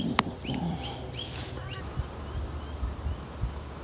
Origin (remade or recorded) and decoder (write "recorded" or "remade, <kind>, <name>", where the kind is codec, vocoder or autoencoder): recorded